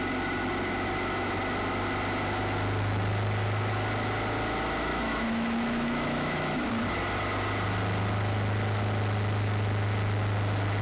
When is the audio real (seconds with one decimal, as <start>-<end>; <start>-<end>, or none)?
0.0-4.9; 6.7-10.8